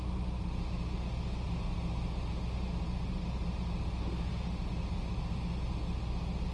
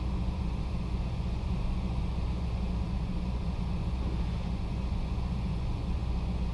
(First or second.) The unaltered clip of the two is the first